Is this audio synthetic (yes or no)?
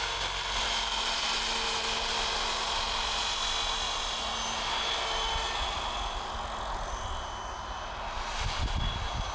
no